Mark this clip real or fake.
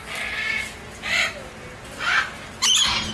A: real